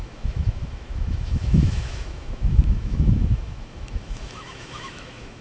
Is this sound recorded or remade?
remade